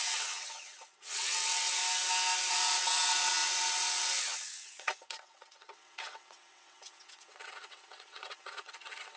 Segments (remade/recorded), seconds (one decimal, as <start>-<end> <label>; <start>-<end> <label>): 0.0-1.8 remade; 1.8-2.5 recorded; 2.5-9.2 remade

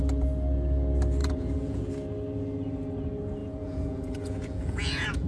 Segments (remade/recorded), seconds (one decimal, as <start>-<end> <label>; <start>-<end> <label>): 0.0-1.2 recorded; 1.2-1.9 remade; 1.9-3.4 recorded; 3.4-5.3 remade